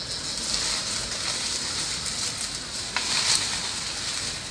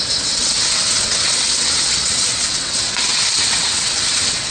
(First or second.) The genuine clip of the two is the first